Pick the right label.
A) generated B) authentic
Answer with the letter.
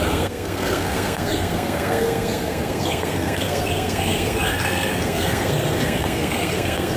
A